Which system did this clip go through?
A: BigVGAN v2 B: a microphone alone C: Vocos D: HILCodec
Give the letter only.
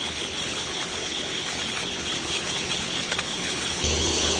D